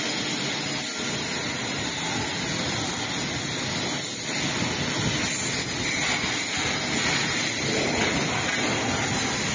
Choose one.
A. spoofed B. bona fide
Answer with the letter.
B